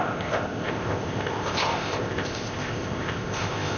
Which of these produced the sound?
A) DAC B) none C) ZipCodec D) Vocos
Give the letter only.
C